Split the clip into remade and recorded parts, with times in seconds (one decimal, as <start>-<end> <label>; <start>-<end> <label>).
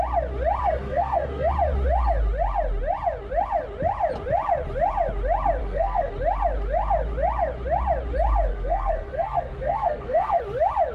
0.0-0.6 recorded; 0.6-1.5 remade; 1.5-5.6 recorded; 5.6-6.1 remade; 6.1-8.5 recorded; 8.5-10.4 remade; 10.4-10.9 recorded